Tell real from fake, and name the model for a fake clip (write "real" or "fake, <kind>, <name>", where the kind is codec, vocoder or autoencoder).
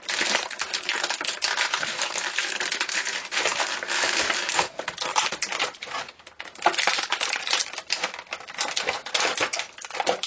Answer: fake, vocoder, BigVGAN v2